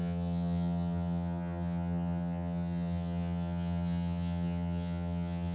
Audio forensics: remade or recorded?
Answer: remade